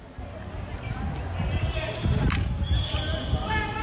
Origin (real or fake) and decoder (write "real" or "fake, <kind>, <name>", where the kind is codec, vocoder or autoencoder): real